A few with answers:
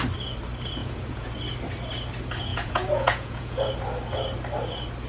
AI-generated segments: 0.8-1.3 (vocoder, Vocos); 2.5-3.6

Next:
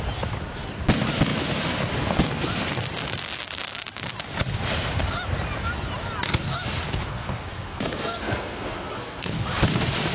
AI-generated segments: 7.1-9.3 (codec, SNAC)